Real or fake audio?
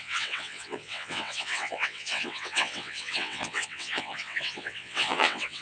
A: fake